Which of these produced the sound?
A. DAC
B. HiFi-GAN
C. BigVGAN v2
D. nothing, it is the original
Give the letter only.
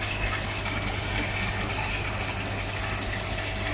D